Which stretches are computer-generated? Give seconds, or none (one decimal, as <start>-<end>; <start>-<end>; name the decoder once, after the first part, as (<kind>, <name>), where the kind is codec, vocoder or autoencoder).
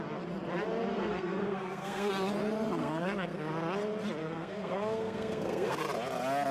0.9-2.1 (codec, SNAC); 2.8-3.5; 4.2-5.8